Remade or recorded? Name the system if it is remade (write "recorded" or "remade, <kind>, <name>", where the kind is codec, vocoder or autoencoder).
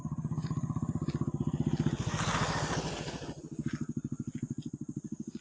recorded